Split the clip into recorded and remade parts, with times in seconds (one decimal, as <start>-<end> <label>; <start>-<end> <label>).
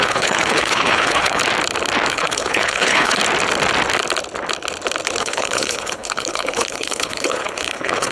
0.0-1.4 remade; 1.4-2.1 recorded; 2.1-3.2 remade; 3.2-5.2 recorded; 5.2-8.1 remade